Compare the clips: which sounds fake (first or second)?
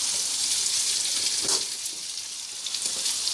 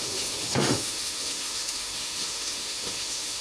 second